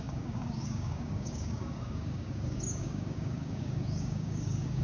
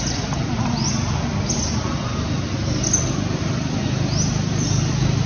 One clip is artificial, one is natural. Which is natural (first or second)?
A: second